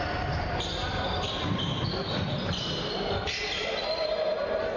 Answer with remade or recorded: remade